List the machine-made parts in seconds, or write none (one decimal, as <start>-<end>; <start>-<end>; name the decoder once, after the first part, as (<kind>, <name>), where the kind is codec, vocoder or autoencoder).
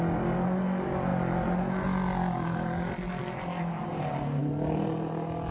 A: none